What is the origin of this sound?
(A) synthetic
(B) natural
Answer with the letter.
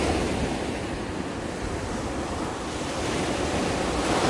B